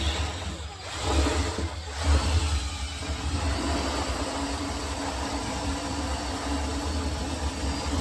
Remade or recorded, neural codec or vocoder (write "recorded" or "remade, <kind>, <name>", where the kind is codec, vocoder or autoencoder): recorded